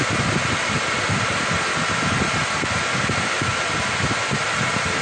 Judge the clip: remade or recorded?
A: recorded